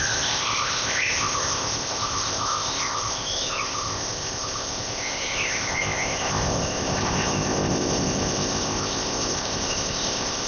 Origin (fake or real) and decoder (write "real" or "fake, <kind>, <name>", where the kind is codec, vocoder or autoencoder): fake, codec, ZipCodec